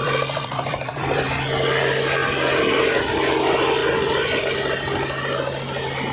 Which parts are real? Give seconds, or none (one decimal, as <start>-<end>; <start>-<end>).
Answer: 1.3-6.1